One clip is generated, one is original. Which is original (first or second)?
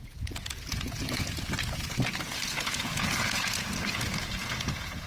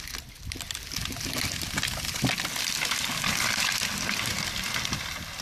second